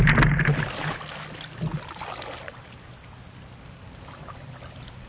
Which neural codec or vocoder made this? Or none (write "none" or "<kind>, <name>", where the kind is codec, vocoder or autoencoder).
none